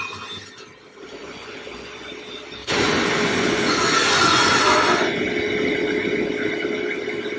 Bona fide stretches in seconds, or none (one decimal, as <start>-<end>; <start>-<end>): 0.0-1.2; 2.1-2.6; 5.2-7.4